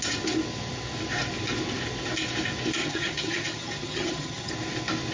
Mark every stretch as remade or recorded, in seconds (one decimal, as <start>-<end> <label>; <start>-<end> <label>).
0.0-2.8 recorded; 2.8-4.5 remade; 4.5-5.1 recorded